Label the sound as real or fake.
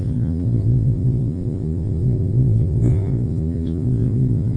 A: fake